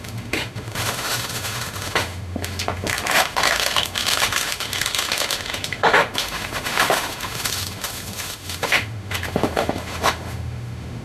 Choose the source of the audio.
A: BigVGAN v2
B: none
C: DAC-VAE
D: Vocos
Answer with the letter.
C